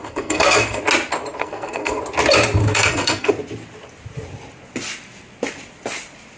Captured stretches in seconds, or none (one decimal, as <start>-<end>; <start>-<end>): 0.8-1.4; 2.0-2.6; 3.3-6.4

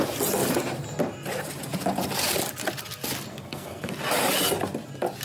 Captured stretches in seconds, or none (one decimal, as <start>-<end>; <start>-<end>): 0.0-3.3; 3.9-5.2

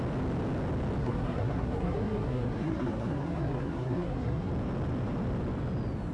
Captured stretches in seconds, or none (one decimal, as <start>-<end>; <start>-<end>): 0.0-1.0; 4.5-6.1

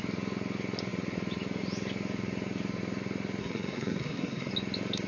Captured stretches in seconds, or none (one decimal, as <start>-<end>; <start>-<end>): 0.0-3.4; 4.5-5.1

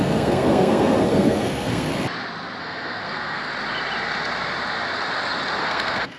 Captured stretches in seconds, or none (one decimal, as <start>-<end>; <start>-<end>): 1.9-2.6; 3.5-5.6

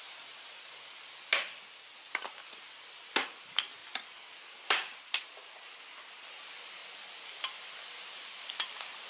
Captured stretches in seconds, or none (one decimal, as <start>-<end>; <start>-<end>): 0.0-9.1